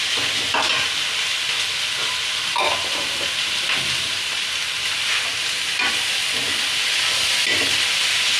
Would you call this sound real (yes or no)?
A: yes